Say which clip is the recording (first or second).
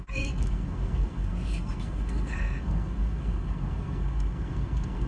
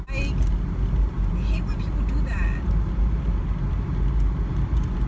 second